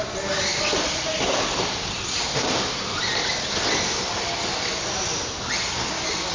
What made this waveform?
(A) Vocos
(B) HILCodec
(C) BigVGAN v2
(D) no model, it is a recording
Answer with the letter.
D